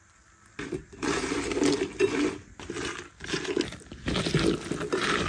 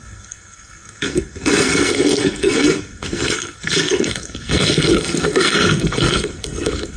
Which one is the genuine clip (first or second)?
first